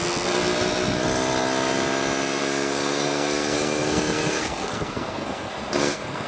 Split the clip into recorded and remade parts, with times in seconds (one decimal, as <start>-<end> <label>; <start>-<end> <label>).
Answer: 0.0-2.4 recorded; 2.4-6.3 remade